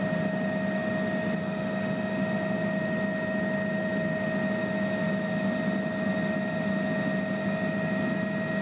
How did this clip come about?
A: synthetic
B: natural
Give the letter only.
B